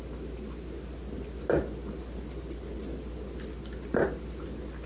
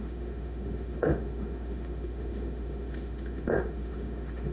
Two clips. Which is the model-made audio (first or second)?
second